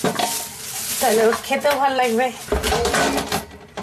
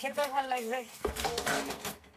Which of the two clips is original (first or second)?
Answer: first